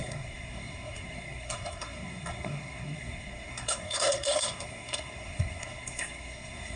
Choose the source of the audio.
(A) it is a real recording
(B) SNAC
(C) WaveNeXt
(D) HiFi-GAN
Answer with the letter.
B